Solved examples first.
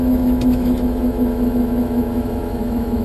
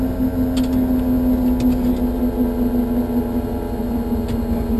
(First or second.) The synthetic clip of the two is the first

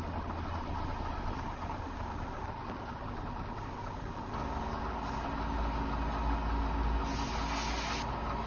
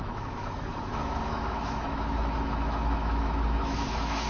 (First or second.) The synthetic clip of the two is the second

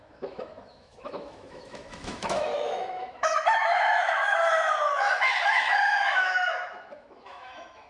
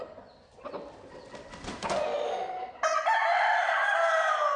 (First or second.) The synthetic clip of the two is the first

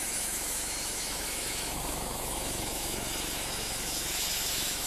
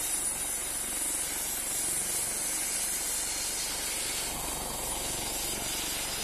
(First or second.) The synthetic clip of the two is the first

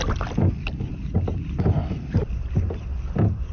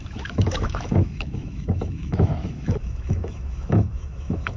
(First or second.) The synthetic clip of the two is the second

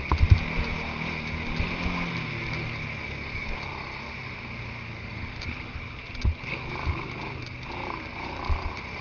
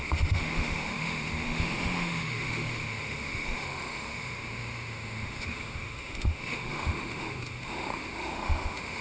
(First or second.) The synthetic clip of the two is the second